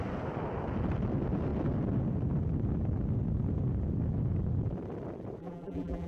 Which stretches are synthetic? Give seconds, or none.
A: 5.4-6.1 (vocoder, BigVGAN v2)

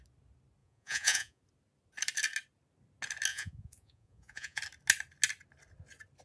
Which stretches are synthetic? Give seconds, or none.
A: 0.6-1.4 (vocoder, Vocos); 3.3-4.6

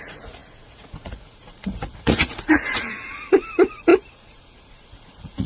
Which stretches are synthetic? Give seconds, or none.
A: 0.0-5.5 (vocoder, Vocos)

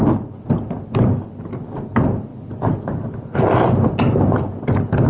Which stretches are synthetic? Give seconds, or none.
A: none

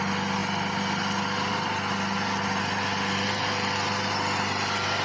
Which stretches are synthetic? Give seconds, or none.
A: none